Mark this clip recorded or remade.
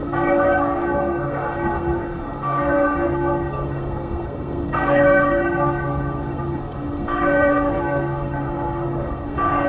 remade